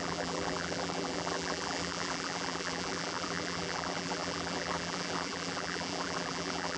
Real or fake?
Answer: fake